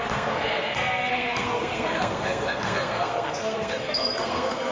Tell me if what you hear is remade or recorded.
remade